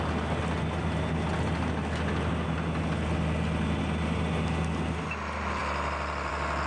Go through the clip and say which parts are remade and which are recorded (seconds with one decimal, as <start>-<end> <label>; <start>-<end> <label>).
0.0-6.7 recorded